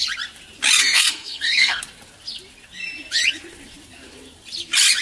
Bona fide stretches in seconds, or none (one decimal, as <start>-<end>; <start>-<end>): 0.0-0.8; 1.8-5.0